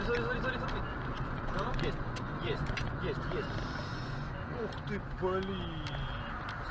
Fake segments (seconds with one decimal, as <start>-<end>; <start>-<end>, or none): 1.1-3.0; 3.9-4.6